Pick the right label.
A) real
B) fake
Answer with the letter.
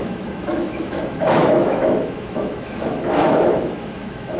B